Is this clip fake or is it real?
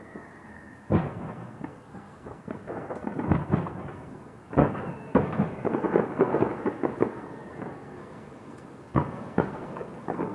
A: fake